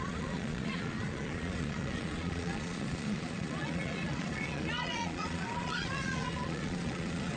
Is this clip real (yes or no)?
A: no